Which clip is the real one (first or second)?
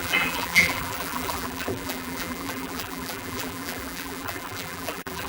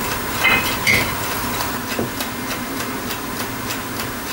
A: second